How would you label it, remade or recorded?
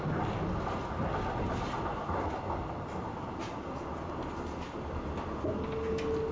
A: recorded